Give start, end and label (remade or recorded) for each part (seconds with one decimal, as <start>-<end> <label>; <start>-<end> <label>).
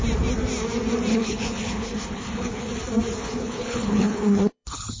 0.0-1.1 recorded; 1.1-2.7 remade; 2.7-3.2 recorded; 3.2-5.0 remade